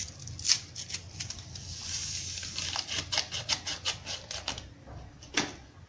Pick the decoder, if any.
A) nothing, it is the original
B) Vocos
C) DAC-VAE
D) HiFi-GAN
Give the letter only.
A